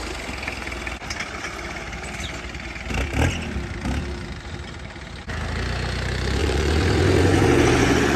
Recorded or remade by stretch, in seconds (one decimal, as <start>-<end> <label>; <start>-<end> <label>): 0.0-6.4 recorded; 6.4-8.2 remade